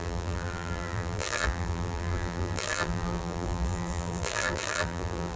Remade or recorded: remade